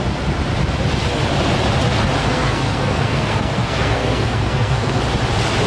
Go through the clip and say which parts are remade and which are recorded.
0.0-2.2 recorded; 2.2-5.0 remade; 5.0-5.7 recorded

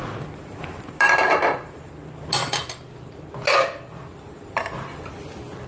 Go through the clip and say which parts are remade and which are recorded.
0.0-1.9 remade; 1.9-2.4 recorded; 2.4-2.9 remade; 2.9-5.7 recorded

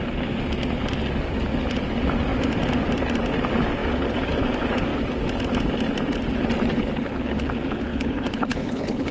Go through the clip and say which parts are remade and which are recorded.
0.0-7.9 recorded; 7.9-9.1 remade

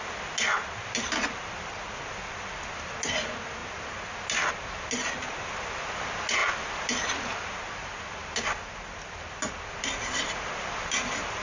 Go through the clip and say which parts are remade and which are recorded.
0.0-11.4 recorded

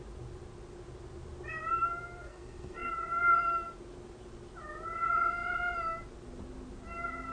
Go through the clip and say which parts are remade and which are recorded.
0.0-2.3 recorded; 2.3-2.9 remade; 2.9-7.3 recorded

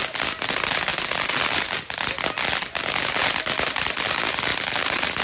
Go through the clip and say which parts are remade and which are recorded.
0.0-4.5 recorded; 4.5-5.2 remade